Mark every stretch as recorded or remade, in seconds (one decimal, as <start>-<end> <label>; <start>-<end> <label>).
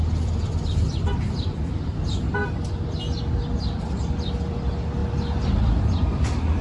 0.0-2.4 remade; 2.4-3.2 recorded; 3.2-6.6 remade